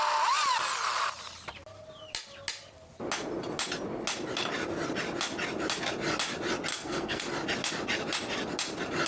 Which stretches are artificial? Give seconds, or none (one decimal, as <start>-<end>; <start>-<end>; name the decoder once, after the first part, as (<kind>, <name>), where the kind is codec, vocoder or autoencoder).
6.7-7.2 (codec, SNAC)